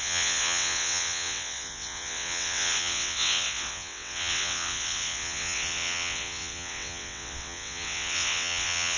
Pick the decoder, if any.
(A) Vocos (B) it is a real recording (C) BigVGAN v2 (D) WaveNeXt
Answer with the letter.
D